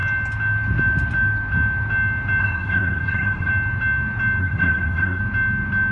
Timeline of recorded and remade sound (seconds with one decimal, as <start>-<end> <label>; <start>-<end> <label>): 0.0-2.4 recorded; 2.4-3.5 remade; 3.5-4.4 recorded; 4.4-5.2 remade; 5.2-5.9 recorded